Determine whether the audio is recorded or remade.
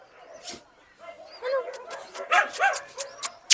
recorded